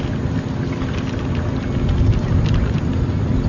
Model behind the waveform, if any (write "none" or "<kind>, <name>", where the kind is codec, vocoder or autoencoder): none